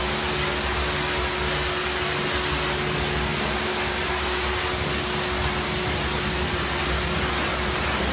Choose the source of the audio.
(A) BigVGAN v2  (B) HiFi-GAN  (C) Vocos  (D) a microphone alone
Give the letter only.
D